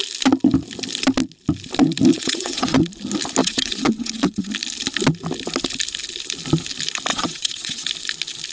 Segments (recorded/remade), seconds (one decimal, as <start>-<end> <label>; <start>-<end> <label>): 0.0-2.1 recorded; 2.1-2.8 remade; 2.8-3.4 recorded; 3.4-4.5 remade; 4.5-7.1 recorded; 7.1-7.9 remade; 7.9-8.5 recorded